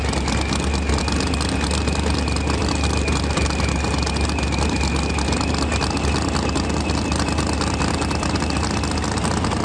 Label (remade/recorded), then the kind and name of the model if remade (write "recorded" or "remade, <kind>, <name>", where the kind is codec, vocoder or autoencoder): recorded